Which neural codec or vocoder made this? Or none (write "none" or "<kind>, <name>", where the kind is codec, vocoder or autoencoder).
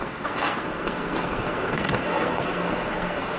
codec, SNAC